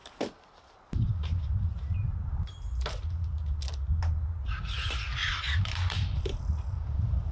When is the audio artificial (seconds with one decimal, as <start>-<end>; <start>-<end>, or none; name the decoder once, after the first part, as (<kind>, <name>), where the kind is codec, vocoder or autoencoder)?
0.0-4.2 (vocoder, BigVGAN v2); 5.2-7.3